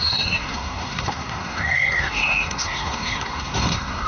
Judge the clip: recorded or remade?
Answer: remade